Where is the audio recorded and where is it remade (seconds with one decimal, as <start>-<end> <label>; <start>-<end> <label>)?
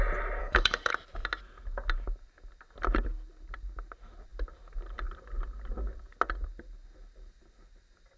0.0-0.4 recorded; 0.4-0.9 remade; 0.9-8.2 recorded